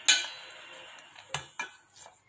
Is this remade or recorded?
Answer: recorded